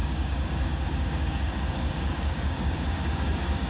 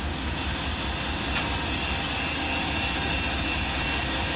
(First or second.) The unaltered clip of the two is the second